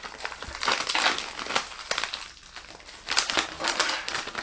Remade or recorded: recorded